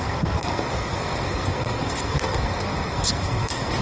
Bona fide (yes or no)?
no